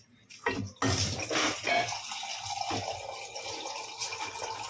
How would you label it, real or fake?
real